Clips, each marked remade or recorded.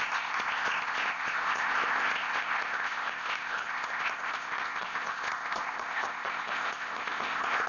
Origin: remade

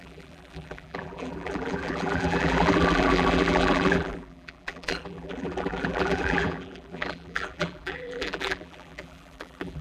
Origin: remade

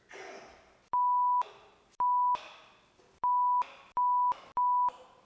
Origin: recorded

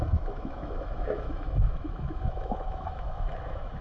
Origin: remade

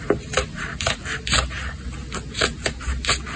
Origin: recorded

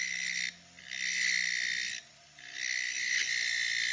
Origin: recorded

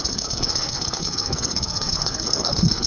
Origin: remade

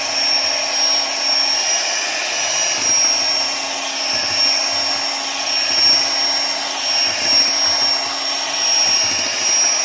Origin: recorded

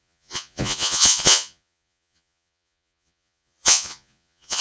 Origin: remade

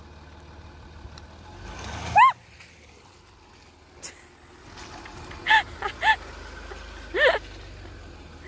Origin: recorded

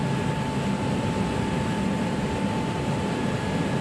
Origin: recorded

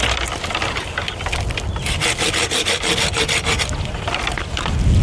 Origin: recorded